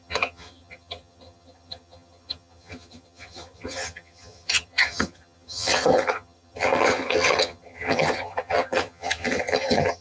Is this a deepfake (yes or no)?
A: yes